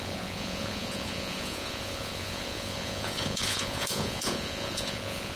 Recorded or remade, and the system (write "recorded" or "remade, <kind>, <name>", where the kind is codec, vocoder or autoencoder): remade, vocoder, Vocos